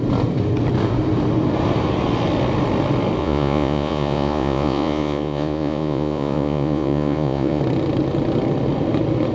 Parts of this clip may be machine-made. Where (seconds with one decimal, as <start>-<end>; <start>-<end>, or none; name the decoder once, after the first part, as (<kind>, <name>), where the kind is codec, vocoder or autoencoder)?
3.2-7.6 (vocoder, Vocos)